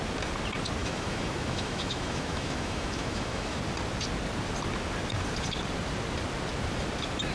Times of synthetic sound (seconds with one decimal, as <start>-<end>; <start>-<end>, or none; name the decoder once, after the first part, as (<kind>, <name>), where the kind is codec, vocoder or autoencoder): 0.8-3.6 (autoencoder, DAC-VAE)